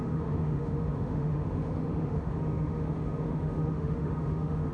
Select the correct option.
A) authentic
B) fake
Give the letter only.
B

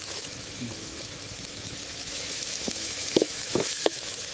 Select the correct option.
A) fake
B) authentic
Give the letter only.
A